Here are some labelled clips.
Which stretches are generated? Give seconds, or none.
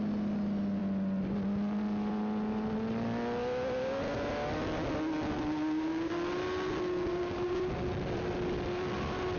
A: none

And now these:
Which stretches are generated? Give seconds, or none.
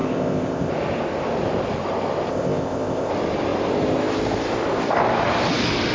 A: 0.0-0.7; 2.3-3.1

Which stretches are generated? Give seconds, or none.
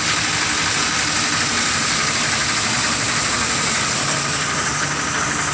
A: none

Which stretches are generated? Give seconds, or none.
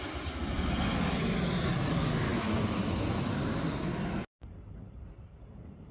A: none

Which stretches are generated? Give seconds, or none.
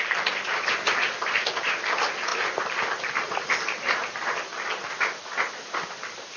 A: none